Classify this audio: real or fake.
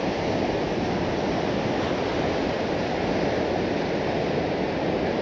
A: real